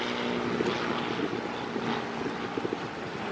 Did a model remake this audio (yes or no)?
no